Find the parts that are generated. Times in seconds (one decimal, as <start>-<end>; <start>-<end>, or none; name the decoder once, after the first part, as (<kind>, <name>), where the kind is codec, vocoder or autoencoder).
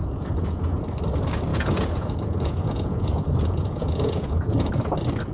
0.0-0.8 (vocoder, Vocos); 1.5-4.7